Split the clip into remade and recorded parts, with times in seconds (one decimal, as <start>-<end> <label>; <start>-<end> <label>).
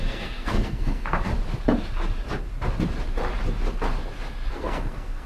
0.0-1.3 remade; 1.3-4.5 recorded; 4.5-5.3 remade